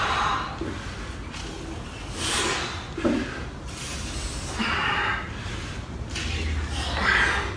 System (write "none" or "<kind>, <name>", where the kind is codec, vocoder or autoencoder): none